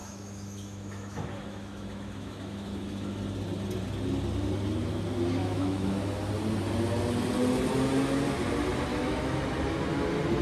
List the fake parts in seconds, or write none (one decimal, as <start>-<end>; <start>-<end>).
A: 0.0-3.2; 5.4-6.3; 8.9-9.4